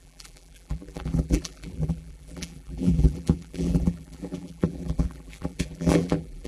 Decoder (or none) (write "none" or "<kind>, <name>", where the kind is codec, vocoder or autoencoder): vocoder, BigVGAN v2